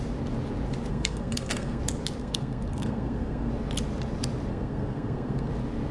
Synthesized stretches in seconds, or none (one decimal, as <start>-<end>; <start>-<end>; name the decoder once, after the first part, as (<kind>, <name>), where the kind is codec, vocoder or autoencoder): 0.9-1.8 (codec, SNAC); 2.2-3.5; 4.5-5.5